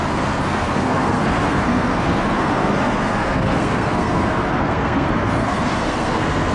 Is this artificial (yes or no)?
yes